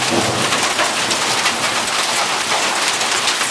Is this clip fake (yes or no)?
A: no